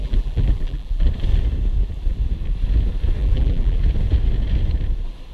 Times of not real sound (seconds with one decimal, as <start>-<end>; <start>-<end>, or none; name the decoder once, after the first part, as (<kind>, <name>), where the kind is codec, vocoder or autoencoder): 0.0-1.1 (vocoder, BigVGAN v2); 3.2-3.8